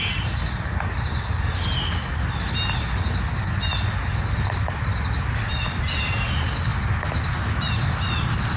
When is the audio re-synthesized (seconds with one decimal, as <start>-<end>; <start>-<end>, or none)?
none